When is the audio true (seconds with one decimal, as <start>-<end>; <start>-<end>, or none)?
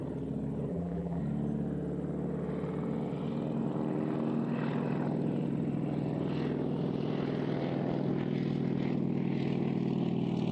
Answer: 0.0-0.7; 1.2-10.5